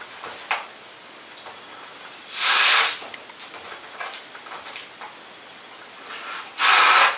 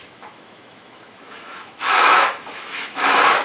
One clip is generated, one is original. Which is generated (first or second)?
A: second